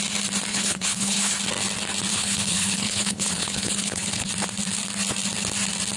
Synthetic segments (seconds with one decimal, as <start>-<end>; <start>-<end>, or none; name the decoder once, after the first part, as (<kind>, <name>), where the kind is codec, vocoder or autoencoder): 0.5-1.3 (codec, HILCodec); 2.1-4.3